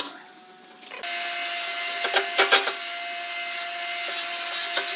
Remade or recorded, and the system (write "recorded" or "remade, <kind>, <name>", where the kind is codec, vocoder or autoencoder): recorded